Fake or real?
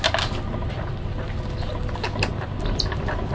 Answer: real